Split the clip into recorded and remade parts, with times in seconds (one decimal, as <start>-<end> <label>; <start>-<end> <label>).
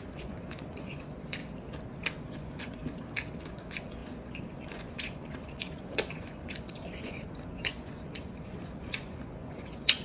0.0-1.4 remade; 1.4-2.2 recorded; 2.2-2.8 remade; 2.8-3.5 recorded; 3.5-10.0 remade